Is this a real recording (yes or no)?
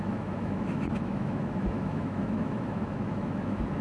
no